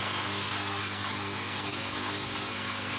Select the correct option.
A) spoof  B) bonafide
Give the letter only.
A